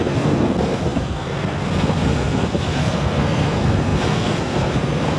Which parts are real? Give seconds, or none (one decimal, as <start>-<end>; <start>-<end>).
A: none